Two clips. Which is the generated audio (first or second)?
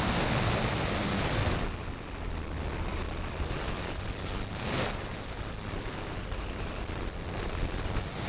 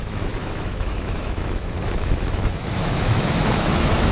second